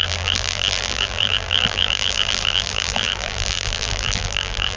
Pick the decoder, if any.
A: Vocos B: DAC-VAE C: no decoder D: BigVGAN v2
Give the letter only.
D